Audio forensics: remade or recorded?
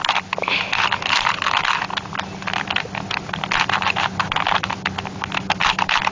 recorded